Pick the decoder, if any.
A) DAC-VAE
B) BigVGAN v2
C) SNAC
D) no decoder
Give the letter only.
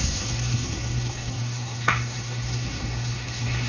C